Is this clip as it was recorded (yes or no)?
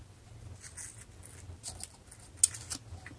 yes